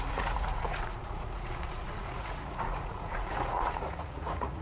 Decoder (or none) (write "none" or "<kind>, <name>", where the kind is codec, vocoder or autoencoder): vocoder, Vocos